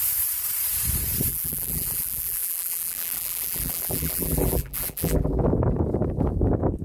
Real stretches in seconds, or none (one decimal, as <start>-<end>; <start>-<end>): 0.0-1.3; 5.4-6.8